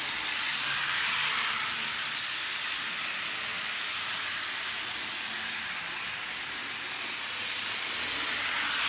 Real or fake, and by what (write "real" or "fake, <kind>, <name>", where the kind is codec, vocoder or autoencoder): real